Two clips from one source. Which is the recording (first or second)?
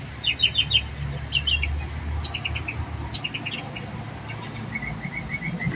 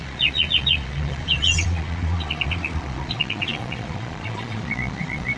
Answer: first